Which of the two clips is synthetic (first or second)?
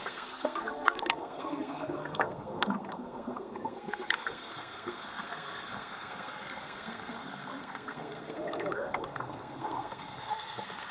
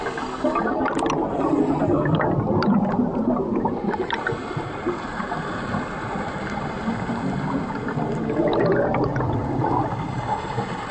first